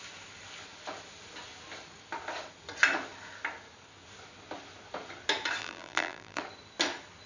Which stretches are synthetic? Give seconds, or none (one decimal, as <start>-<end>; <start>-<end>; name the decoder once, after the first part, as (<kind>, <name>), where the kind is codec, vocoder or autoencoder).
5.6-6.4 (vocoder, BigVGAN v2)